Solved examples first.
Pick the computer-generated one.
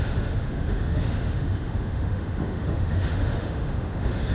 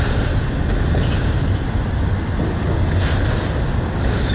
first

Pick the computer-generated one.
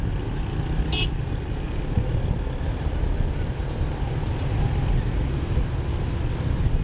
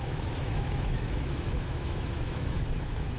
second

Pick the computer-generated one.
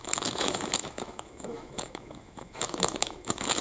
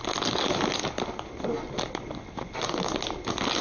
first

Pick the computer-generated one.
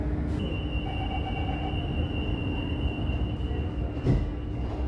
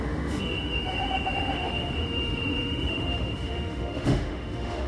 second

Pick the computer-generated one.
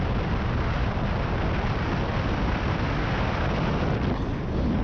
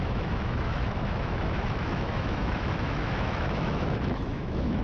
second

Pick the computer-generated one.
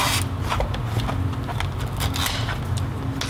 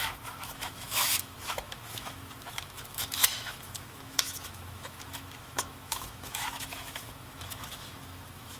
second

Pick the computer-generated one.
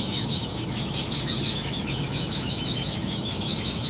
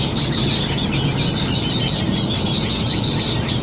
first